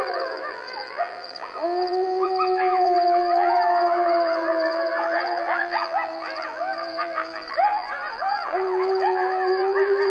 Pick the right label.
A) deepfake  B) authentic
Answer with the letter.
A